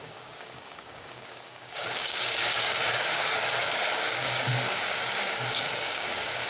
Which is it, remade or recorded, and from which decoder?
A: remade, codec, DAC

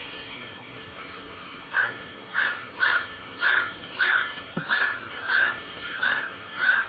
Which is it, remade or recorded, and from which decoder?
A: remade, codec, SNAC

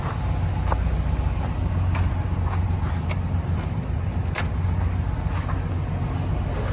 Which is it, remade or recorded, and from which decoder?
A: recorded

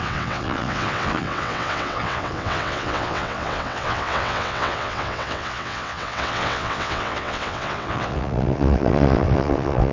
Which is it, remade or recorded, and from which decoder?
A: remade, vocoder, WaveNeXt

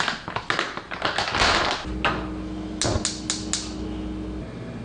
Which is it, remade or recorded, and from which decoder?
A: recorded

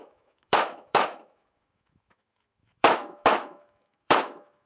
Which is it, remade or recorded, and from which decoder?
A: remade, autoencoder, DAC-VAE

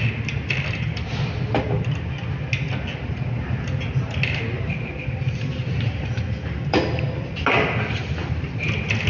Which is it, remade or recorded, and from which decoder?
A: recorded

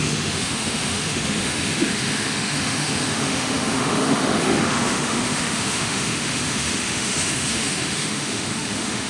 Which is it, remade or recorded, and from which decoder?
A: remade, autoencoder, DAC-VAE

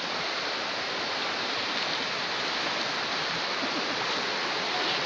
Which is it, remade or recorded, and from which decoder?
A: recorded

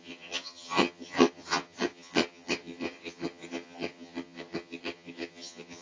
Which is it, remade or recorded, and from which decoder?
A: remade, vocoder, HiFi-GAN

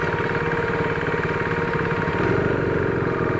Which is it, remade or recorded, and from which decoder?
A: recorded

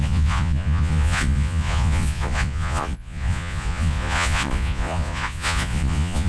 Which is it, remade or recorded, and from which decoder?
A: remade, vocoder, Vocos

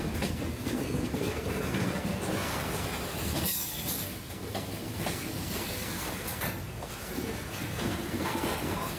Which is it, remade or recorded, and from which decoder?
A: remade, codec, SNAC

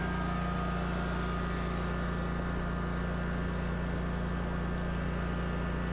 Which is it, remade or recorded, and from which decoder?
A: recorded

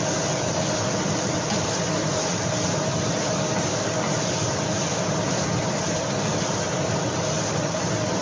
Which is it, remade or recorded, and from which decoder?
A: recorded